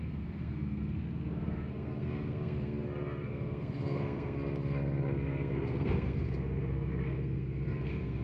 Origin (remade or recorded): remade